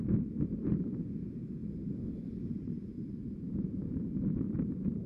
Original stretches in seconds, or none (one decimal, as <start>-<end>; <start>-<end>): 0.0-1.6